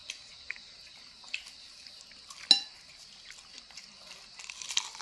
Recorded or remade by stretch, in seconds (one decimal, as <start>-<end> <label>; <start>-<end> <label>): 0.0-5.0 recorded